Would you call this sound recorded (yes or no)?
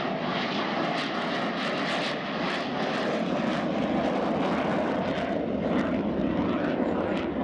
yes